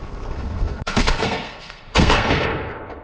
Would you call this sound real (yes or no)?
no